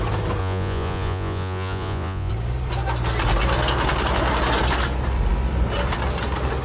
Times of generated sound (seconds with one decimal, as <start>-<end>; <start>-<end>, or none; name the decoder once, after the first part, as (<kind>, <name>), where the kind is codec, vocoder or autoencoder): 0.4-2.3 (vocoder, Vocos)